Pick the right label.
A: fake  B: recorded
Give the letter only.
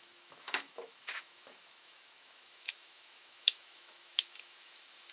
A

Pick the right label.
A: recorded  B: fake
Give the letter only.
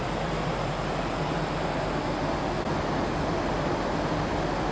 A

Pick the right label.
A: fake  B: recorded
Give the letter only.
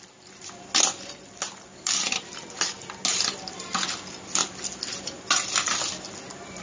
B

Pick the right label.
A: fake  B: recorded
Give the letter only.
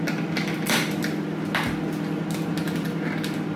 B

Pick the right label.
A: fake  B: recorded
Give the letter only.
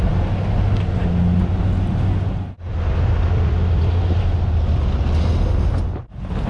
B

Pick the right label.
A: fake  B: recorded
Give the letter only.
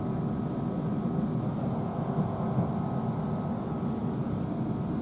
B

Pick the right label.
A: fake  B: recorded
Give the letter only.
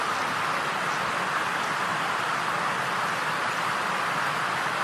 B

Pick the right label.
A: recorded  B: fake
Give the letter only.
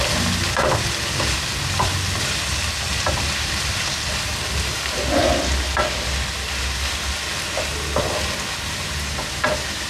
A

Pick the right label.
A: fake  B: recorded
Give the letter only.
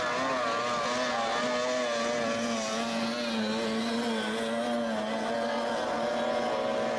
B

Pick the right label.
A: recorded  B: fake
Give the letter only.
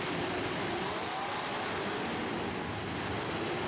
A